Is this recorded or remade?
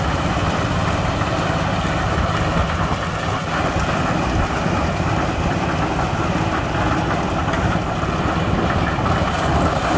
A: recorded